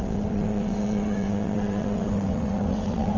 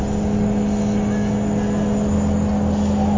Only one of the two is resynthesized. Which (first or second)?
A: first